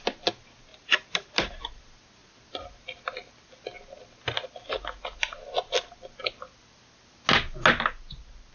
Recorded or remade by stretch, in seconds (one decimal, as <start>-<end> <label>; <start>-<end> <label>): 0.0-0.7 recorded; 0.7-1.6 remade; 1.6-8.5 recorded